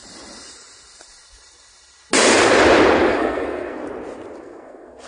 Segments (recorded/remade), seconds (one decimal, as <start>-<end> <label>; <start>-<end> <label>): 0.0-3.1 recorded; 3.1-3.8 remade; 3.8-4.4 recorded; 4.4-5.1 remade